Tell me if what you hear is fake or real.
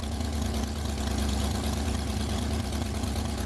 fake